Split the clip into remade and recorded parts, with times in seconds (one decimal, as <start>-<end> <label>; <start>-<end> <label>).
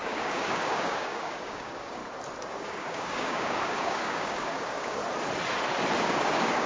0.0-2.0 remade; 2.0-2.5 recorded; 2.5-5.0 remade; 5.0-6.0 recorded; 6.0-6.7 remade